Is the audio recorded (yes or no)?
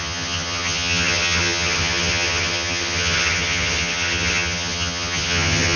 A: no